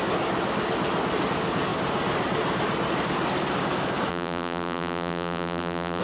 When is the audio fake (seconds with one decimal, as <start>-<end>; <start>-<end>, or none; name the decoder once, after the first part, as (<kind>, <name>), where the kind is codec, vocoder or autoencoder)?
4.1-6.0 (vocoder, BigVGAN v2)

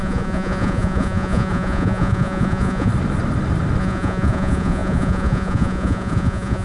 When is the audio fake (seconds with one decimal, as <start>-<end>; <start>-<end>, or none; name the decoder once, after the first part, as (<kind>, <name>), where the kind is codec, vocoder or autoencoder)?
0.0-2.9 (vocoder, Vocos); 3.8-6.6

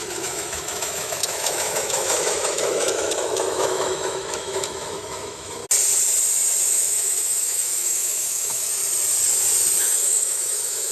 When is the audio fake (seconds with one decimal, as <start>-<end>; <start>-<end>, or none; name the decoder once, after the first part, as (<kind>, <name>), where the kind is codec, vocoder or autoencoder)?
0.0-5.6 (autoencoder, DAC-VAE); 6.6-8.8; 9.8-10.9